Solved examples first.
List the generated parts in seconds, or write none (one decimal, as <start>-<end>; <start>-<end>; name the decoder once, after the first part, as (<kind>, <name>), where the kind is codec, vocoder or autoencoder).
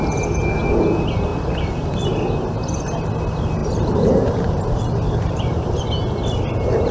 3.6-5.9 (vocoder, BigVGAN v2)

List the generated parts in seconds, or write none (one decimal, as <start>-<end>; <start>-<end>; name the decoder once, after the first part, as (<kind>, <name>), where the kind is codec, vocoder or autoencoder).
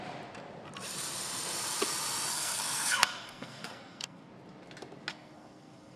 2.3-4.3 (codec, SNAC); 5.1-6.0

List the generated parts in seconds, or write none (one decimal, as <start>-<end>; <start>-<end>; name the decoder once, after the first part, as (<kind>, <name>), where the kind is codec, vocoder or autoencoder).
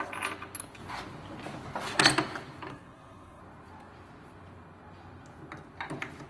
2.7-3.4 (codec, SNAC)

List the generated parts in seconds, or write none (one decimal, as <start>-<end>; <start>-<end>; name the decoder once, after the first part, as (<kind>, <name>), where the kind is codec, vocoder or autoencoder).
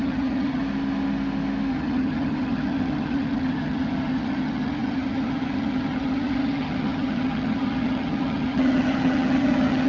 0.0-0.6 (vocoder, HiFi-GAN); 1.7-9.9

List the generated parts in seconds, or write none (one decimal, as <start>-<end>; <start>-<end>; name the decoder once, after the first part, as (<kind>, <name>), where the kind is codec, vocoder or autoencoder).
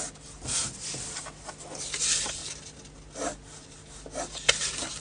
none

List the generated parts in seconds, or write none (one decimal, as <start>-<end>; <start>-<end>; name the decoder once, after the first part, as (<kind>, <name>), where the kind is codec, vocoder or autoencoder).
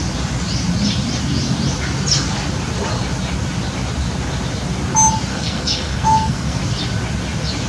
5.3-6.6 (codec, SNAC)